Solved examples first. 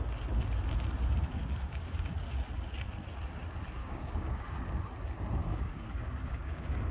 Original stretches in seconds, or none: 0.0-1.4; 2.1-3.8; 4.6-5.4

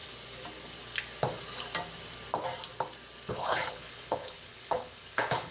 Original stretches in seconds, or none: 0.0-3.3

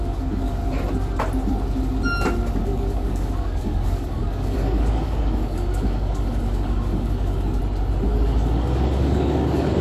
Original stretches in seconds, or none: 0.6-2.6; 7.6-8.1

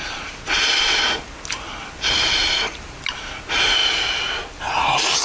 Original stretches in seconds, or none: 0.0-5.2

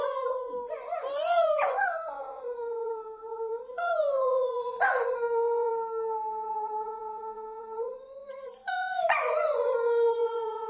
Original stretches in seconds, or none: 5.7-6.5

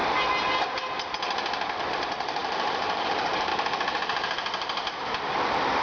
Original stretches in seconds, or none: 0.0-1.8; 3.5-5.8